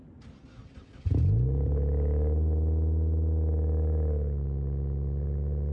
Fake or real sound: real